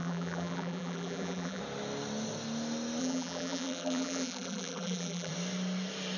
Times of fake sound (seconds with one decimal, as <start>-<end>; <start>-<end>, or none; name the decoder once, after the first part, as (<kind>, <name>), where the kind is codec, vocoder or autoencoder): 0.0-1.6 (vocoder, BigVGAN v2); 3.0-5.3